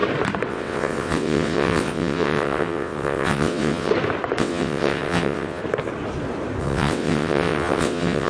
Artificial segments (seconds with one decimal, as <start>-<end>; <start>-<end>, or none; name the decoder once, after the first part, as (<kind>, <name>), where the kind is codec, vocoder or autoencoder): 0.5-3.9 (vocoder, WaveNeXt); 4.4-5.6; 6.6-8.3